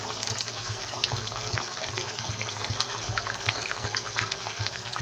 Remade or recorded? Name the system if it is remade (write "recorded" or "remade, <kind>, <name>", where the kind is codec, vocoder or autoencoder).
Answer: remade, codec, SNAC